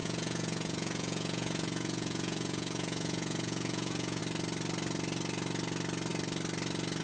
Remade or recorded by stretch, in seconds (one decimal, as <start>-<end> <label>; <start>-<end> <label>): 0.0-4.2 remade; 4.2-7.0 recorded